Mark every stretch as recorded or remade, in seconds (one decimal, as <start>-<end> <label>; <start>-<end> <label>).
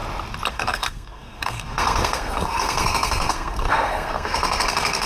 0.0-0.5 recorded; 0.5-5.1 remade